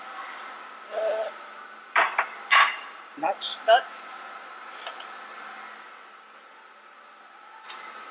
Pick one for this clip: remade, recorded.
recorded